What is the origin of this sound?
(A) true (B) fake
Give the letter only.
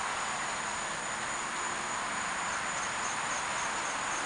A